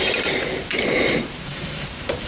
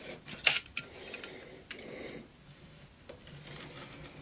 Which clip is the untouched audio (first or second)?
second